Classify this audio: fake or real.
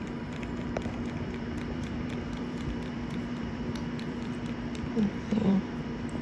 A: fake